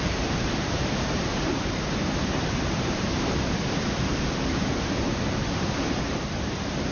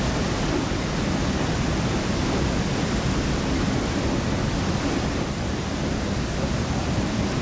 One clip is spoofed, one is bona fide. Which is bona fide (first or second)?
second